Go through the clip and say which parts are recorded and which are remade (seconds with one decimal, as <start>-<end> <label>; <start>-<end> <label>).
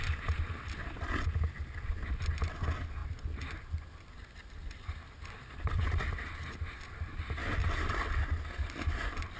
0.0-3.0 recorded; 3.0-5.7 remade; 5.7-7.4 recorded; 7.4-7.9 remade; 7.9-9.4 recorded